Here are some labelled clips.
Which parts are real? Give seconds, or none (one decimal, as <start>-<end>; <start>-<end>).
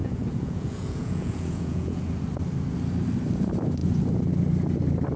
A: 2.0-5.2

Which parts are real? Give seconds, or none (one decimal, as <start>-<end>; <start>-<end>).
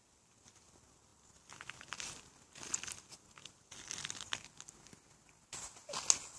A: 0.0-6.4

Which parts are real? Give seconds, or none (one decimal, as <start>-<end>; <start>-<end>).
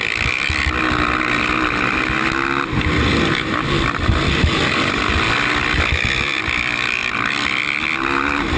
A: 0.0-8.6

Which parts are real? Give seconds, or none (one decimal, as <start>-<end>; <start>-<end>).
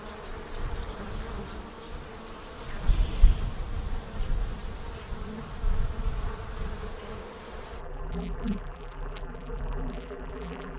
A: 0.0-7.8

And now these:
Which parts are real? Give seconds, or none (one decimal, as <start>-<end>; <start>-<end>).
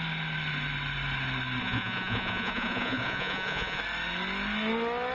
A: 0.0-1.6; 3.8-5.1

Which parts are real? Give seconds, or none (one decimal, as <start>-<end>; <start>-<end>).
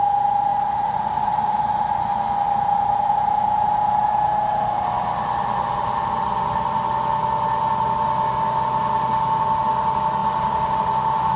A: 0.0-11.4